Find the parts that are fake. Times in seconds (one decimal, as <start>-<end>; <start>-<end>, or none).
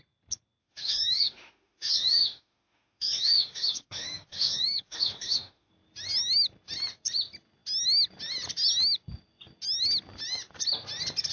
0.6-5.7